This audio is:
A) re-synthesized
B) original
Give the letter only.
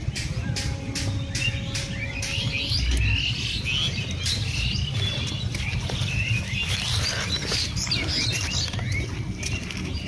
B